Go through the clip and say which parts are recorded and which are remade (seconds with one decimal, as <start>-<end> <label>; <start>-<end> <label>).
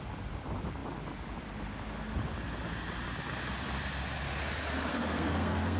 0.0-4.9 recorded; 4.9-5.8 remade